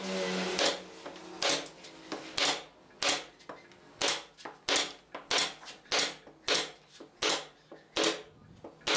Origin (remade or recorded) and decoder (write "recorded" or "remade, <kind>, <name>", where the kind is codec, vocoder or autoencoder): recorded